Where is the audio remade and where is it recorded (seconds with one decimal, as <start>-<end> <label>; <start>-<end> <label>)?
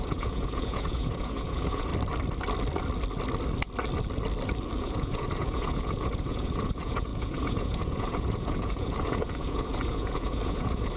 0.0-1.9 remade; 1.9-4.8 recorded; 4.8-11.0 remade